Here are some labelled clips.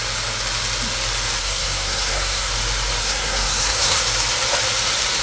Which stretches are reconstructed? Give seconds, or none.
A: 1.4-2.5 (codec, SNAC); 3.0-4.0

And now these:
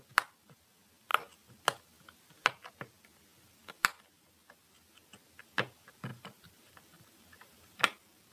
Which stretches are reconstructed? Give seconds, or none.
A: 6.1-8.3 (vocoder, BigVGAN v2)